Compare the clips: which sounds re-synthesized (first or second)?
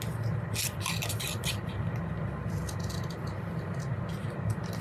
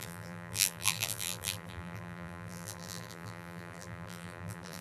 second